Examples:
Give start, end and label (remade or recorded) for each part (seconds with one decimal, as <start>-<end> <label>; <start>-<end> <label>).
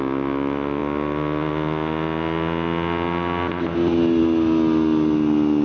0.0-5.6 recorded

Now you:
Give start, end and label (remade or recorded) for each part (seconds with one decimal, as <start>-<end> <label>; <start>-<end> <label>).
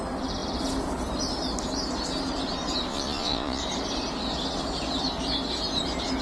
0.0-2.9 recorded; 2.9-3.6 remade; 3.6-6.2 recorded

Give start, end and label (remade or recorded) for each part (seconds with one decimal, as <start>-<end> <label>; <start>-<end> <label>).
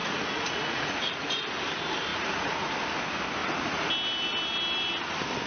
0.0-1.4 remade; 1.4-2.1 recorded; 2.1-2.7 remade; 2.7-3.4 recorded; 3.4-3.9 remade; 3.9-5.5 recorded